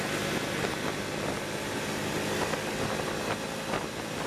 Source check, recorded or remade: recorded